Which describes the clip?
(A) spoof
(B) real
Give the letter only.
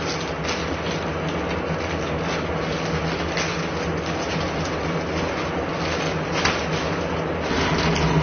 B